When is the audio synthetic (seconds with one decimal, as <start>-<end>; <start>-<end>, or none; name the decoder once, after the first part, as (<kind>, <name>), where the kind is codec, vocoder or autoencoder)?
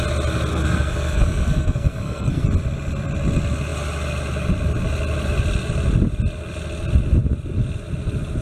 0.5-2.5 (codec, SNAC)